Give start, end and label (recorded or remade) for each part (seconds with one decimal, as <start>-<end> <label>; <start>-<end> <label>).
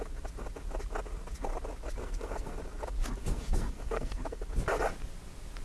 0.0-2.0 recorded; 2.0-2.6 remade; 2.6-3.2 recorded; 3.2-4.4 remade; 4.4-5.6 recorded